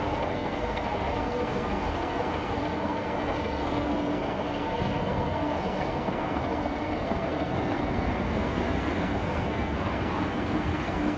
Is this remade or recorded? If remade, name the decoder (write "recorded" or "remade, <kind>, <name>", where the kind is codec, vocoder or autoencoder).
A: remade, codec, SNAC